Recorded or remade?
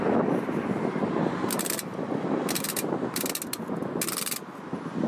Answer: recorded